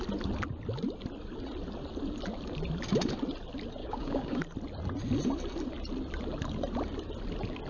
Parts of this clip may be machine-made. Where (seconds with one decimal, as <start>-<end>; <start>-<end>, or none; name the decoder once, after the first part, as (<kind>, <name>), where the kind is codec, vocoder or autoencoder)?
3.8-4.4 (codec, DAC)